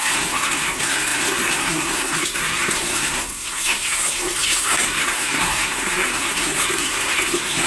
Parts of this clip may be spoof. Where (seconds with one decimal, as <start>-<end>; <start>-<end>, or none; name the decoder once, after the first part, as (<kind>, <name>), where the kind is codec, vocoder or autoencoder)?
0.0-7.7 (codec, SNAC)